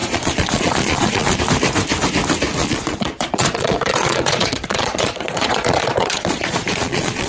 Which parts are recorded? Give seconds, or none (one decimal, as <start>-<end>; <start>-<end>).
1.4-2.6